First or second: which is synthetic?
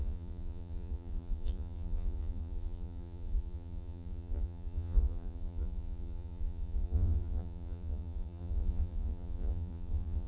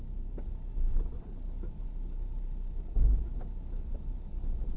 first